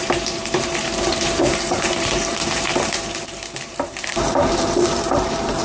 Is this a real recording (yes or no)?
no